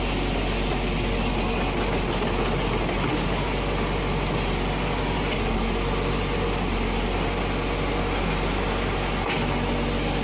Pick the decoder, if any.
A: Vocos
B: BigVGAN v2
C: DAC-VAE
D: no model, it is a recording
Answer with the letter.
D